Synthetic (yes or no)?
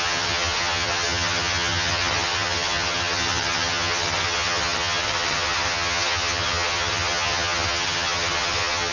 yes